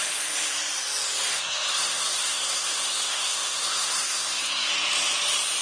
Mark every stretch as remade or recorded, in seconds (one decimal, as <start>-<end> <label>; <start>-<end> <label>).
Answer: 0.0-1.3 recorded; 1.3-4.7 remade; 4.7-5.6 recorded